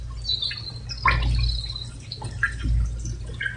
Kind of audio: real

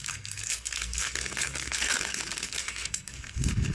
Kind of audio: fake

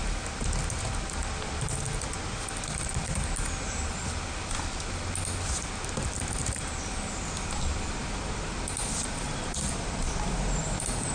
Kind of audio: real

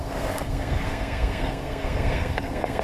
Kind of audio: fake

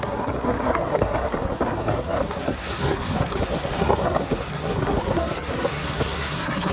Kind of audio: fake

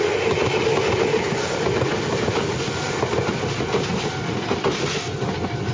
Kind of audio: real